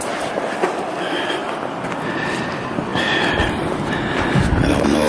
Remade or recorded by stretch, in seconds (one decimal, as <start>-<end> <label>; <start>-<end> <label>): 0.0-5.1 recorded

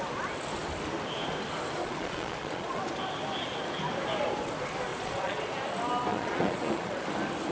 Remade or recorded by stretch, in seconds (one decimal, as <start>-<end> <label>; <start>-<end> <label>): 0.0-1.8 recorded; 1.8-2.8 remade; 2.8-4.9 recorded; 4.9-5.5 remade; 5.5-6.1 recorded; 6.1-7.0 remade; 7.0-7.5 recorded

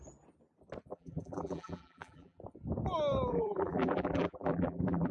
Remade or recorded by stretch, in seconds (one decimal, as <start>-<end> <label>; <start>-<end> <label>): 0.0-0.9 recorded; 0.9-2.4 remade; 2.4-3.3 recorded; 3.3-5.1 remade

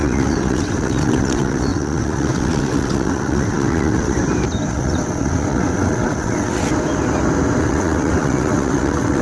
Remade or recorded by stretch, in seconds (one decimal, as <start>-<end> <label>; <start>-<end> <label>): 0.0-4.2 remade; 4.2-4.7 recorded; 4.7-6.7 remade; 6.7-7.6 recorded; 7.6-9.2 remade

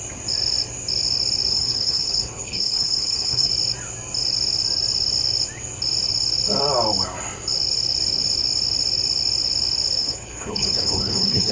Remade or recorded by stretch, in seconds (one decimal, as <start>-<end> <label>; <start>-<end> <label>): 0.0-1.5 recorded; 1.5-3.5 remade; 3.5-10.0 recorded; 10.0-11.5 remade

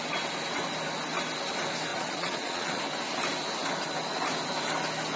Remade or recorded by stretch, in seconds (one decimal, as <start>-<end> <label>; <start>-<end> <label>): 0.0-1.9 recorded; 1.9-2.8 remade; 2.8-5.2 recorded

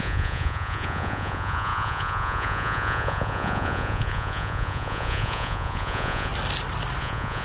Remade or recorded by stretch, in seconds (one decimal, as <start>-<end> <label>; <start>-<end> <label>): 0.0-6.3 remade; 6.3-7.0 recorded; 7.0-7.4 remade

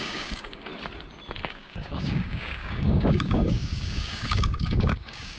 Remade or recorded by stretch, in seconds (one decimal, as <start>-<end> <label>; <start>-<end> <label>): 0.0-0.7 remade; 0.7-1.5 recorded; 1.5-5.4 remade